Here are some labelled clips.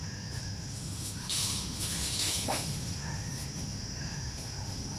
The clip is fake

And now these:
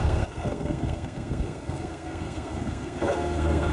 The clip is fake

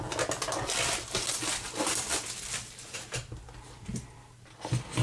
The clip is real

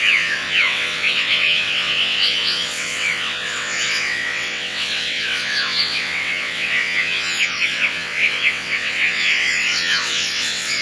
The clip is fake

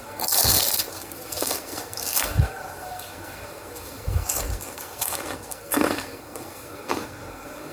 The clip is fake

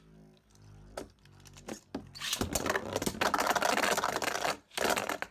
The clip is real